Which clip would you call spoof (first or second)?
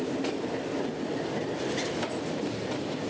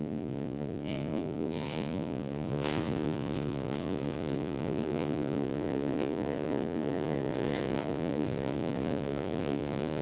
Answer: second